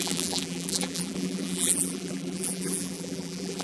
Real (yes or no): no